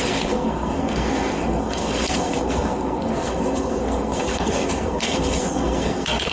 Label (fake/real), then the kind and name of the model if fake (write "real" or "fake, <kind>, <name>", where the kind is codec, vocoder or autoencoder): fake, codec, SNAC